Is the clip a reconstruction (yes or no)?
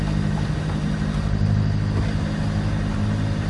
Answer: no